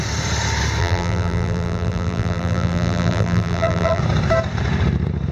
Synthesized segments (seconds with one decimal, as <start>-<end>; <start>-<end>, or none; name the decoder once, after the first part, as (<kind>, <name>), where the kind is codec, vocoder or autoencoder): 0.8-4.0 (vocoder, BigVGAN v2)